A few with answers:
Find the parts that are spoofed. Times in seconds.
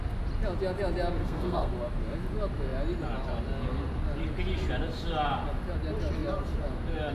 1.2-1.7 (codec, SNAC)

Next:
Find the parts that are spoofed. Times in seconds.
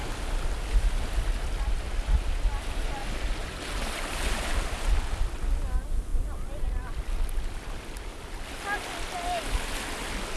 3.0-5.2 (vocoder, BigVGAN v2); 6.1-7.8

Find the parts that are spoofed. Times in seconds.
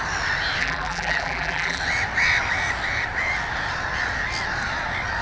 0.6-1.8 (vocoder, BigVGAN v2)